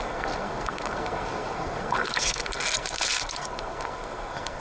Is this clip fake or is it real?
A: fake